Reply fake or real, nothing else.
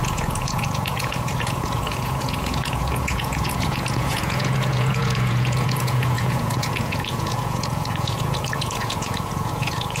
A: fake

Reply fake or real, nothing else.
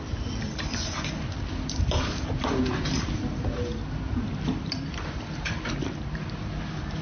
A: real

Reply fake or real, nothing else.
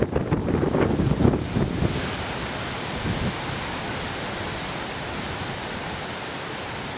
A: real